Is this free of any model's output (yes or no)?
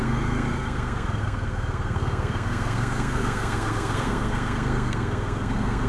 no